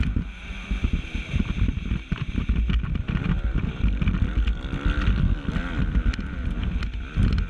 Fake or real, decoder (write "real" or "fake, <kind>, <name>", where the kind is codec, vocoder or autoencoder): real